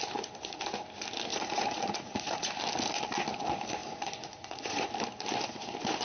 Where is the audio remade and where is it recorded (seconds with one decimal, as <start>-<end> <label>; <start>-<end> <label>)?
0.0-1.3 recorded; 1.3-2.5 remade; 2.5-3.8 recorded; 3.8-4.9 remade; 4.9-6.0 recorded